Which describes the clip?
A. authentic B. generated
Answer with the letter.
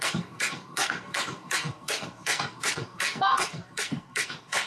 B